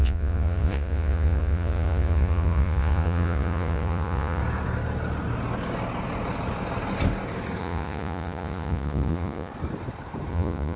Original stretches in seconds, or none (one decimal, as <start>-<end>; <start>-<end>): 4.4-7.6; 9.5-10.3